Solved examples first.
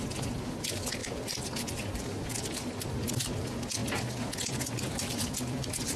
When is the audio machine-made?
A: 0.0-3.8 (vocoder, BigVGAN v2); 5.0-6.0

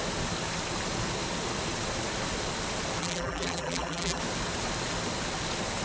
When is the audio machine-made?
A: 3.0-4.2 (vocoder, BigVGAN v2)

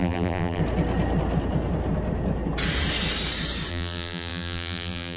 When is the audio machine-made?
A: 0.0-0.6 (vocoder, BigVGAN v2); 3.7-5.2

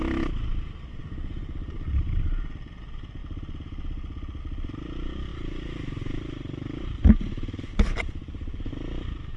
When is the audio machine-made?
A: 1.0-2.7 (vocoder, BigVGAN v2); 5.3-8.7

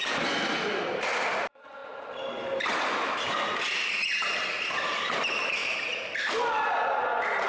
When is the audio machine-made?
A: 5.6-6.3 (vocoder, BigVGAN v2)

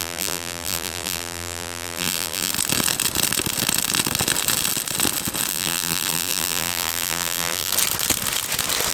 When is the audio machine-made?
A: 0.0-2.5 (vocoder, BigVGAN v2); 5.5-7.7

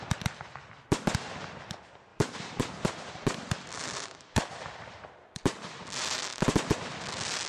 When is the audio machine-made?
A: 2.1-3.7 (vocoder, BigVGAN v2)

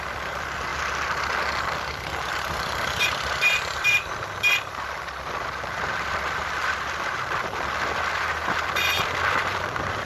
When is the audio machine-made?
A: 0.0-0.7 (vocoder, BigVGAN v2); 2.3-10.1